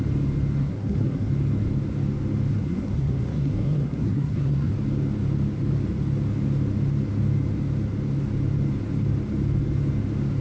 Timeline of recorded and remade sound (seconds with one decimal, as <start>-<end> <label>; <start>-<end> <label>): 0.0-0.6 recorded; 0.6-1.3 remade; 1.3-2.5 recorded; 2.5-4.7 remade; 4.7-10.4 recorded